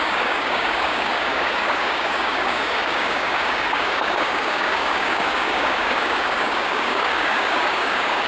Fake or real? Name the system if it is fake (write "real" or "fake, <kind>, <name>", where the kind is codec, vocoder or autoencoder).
fake, codec, DAC